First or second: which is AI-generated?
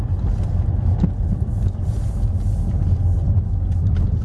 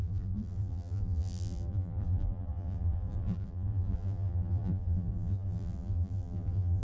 second